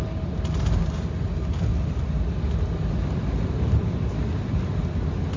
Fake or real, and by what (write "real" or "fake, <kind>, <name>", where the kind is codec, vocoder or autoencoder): real